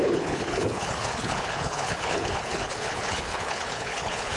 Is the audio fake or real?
fake